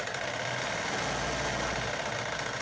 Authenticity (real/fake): real